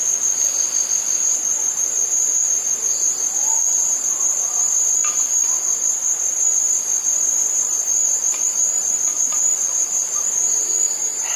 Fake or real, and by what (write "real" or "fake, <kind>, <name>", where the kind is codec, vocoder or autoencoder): real